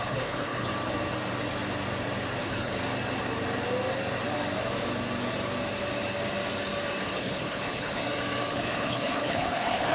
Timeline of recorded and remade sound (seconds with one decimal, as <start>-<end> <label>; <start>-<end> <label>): 0.0-0.7 remade; 0.7-2.4 recorded; 2.4-2.8 remade; 2.8-7.0 recorded; 7.0-8.0 remade; 8.0-8.5 recorded; 8.5-9.9 remade